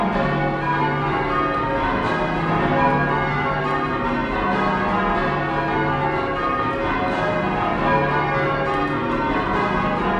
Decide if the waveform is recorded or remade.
recorded